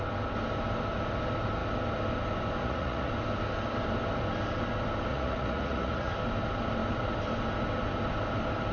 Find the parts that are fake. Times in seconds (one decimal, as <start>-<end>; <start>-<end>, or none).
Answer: 2.6-3.1; 5.1-6.1